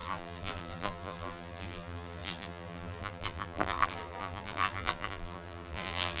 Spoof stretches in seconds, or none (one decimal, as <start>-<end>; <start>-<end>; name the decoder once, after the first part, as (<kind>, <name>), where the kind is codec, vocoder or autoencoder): 0.0-6.2 (vocoder, BigVGAN v2)